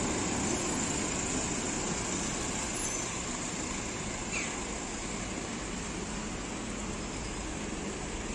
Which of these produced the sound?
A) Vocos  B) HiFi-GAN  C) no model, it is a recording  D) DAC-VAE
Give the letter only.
C